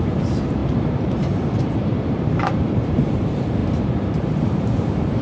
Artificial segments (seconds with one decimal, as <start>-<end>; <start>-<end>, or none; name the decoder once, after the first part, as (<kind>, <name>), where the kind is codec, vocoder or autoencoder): 0.0-3.6 (vocoder, BigVGAN v2); 4.2-5.2

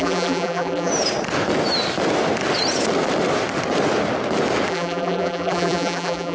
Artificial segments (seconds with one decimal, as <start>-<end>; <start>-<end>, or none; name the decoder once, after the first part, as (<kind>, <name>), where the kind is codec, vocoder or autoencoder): 0.0-0.9 (vocoder, BigVGAN v2); 4.7-6.3